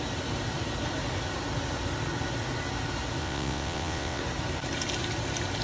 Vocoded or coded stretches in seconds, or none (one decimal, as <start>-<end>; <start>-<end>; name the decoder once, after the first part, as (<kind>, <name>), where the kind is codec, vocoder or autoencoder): 3.2-4.2 (vocoder, WaveNeXt)